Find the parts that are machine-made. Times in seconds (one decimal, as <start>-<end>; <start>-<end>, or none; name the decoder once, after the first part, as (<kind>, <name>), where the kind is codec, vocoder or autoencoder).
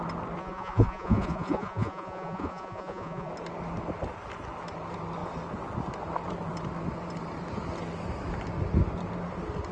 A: 0.4-3.3 (vocoder, Vocos)